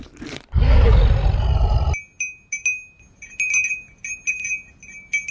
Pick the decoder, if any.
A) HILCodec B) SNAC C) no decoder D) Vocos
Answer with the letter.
C